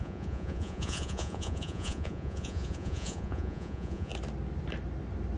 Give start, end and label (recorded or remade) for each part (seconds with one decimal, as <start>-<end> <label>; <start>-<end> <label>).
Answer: 0.0-4.1 remade; 4.1-5.4 recorded